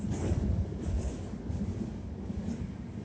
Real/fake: fake